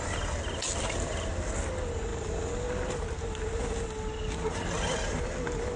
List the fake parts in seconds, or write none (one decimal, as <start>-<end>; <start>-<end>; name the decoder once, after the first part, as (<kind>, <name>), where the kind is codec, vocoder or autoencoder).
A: none